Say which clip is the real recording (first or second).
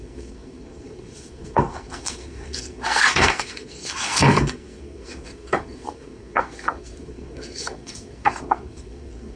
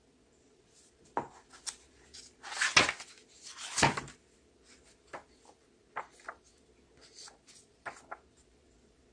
second